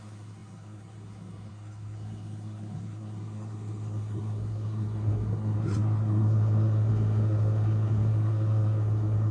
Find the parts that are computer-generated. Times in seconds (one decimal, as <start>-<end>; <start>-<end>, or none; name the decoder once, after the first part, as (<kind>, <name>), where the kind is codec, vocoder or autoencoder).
0.0-9.3 (codec, SNAC)